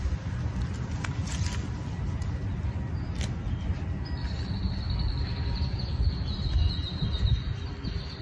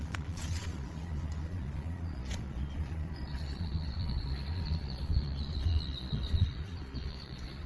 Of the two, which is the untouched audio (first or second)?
first